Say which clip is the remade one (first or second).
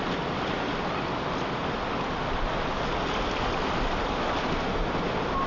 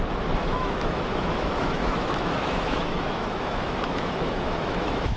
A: second